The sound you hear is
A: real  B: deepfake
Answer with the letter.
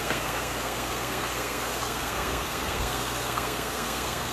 B